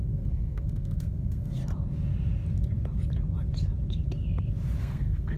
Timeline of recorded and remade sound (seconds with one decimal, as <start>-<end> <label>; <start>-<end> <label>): 0.0-1.6 remade; 1.6-4.8 recorded; 4.8-5.4 remade

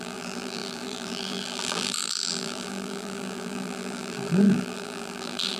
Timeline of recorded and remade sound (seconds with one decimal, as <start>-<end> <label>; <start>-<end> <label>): 0.0-5.6 remade

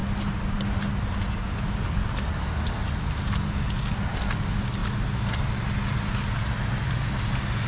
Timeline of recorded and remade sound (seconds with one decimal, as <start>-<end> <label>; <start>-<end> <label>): 0.0-7.7 recorded

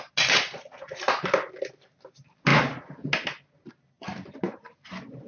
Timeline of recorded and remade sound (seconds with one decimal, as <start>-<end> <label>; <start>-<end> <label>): 0.0-5.3 recorded

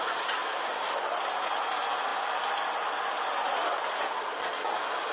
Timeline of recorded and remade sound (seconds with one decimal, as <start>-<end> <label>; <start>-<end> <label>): 0.0-2.1 recorded; 2.1-3.8 remade; 3.8-5.1 recorded

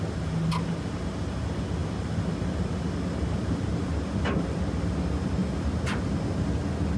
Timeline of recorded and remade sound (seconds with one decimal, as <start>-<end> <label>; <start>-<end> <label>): 0.0-7.0 recorded

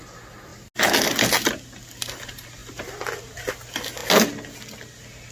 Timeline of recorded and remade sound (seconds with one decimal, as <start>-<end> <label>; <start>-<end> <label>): 0.0-5.3 recorded

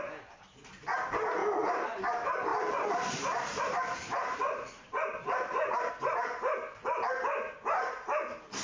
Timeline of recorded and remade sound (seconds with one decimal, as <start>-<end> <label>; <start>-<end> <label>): 0.0-1.4 recorded; 1.4-2.0 remade; 2.0-2.5 recorded; 2.5-5.9 remade; 5.9-8.6 recorded